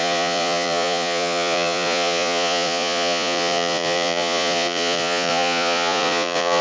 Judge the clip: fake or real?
fake